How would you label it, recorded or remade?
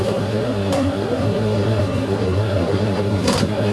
remade